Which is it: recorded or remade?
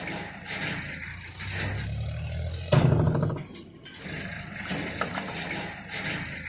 recorded